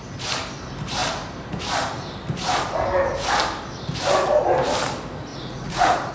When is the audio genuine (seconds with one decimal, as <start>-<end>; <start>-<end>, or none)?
0.0-5.3